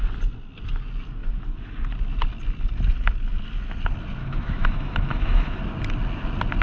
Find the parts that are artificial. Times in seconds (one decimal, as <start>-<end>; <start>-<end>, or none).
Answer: 4.2-5.6